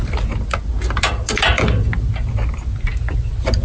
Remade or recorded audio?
recorded